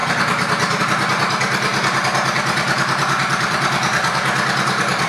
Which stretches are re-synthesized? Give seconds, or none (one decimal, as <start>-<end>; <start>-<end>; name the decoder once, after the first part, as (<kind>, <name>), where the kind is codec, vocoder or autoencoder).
1.7-5.1 (vocoder, BigVGAN v2)